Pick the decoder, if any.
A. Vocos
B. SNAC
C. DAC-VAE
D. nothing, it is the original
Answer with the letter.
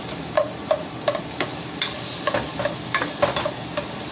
D